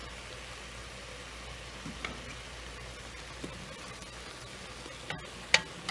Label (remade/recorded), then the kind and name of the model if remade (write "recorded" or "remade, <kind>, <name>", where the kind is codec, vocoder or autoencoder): recorded